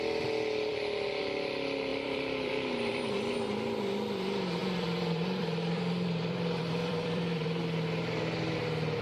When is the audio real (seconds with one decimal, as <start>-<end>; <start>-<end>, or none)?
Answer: 0.0-1.9; 2.5-4.6; 7.6-9.0